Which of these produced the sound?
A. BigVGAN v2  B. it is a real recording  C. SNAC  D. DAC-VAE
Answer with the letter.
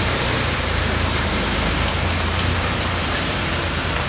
A